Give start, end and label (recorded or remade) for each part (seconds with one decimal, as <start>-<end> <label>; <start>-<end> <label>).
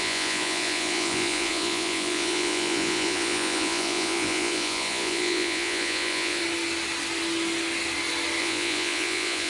0.0-6.4 remade; 6.4-8.4 recorded; 8.4-9.5 remade